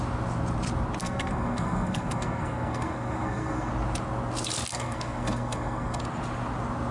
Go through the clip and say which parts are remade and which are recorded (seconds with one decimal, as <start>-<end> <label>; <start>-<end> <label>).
0.0-1.0 recorded; 1.0-3.7 remade; 3.7-4.7 recorded; 4.7-6.0 remade; 6.0-6.9 recorded